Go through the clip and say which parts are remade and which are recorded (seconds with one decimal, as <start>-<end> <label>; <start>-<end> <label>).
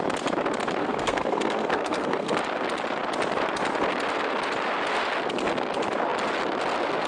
0.0-0.8 recorded; 0.8-2.4 remade; 2.4-7.1 recorded